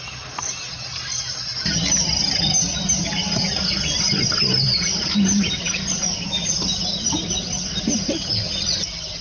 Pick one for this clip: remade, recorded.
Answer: recorded